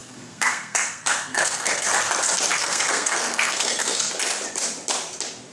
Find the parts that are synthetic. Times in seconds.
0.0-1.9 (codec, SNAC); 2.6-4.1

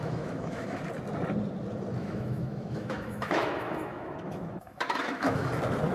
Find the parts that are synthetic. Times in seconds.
0.0-0.8 (autoencoder, DAC-VAE); 2.0-5.5

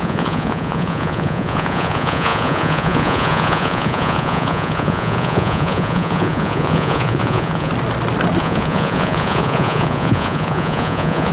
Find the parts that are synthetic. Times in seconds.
0.0-7.7 (vocoder, Vocos); 8.4-11.3

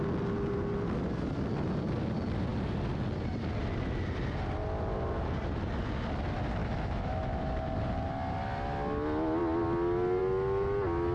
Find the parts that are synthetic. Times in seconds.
6.6-7.5 (autoencoder, DAC-VAE)

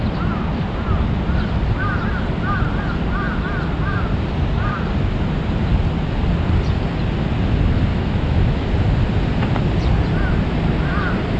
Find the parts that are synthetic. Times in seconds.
7.9-8.7 (autoencoder, DAC-VAE)

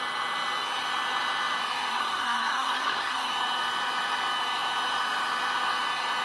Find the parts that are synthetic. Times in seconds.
1.9-3.3 (codec, SNAC)